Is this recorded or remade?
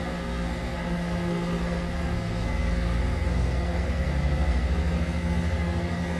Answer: remade